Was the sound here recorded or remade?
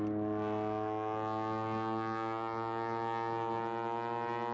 recorded